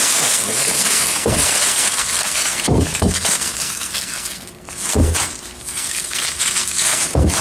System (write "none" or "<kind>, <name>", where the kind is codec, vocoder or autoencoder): codec, SNAC